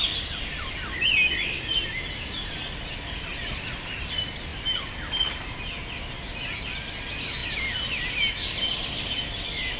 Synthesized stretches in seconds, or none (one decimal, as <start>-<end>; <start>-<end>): none